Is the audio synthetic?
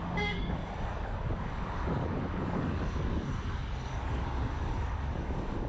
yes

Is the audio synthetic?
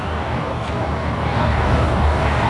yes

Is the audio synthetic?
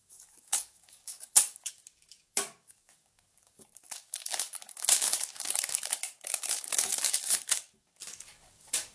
yes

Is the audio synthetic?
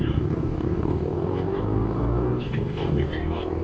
yes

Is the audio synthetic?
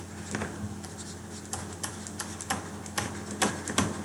no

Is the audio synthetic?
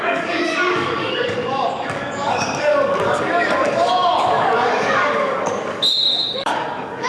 yes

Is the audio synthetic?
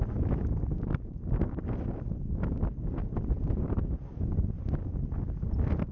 no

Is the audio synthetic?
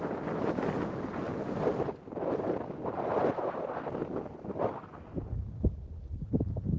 no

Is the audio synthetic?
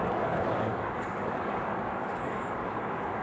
yes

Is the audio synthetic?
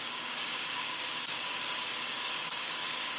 yes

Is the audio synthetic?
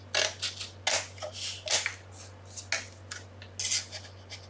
no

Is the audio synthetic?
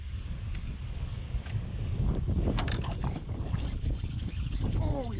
yes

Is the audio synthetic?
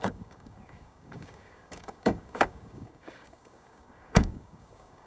yes